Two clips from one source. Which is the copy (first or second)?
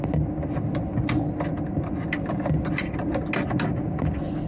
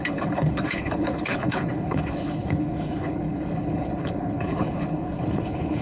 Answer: second